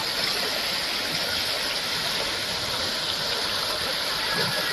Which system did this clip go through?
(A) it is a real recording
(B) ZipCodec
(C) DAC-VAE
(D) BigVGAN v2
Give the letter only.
A